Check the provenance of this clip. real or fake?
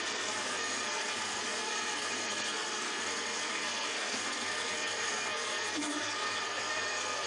fake